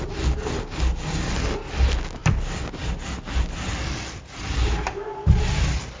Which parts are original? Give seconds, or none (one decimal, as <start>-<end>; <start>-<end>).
0.0-6.0